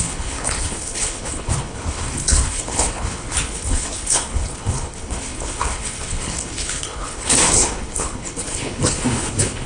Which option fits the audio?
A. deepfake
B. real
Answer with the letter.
A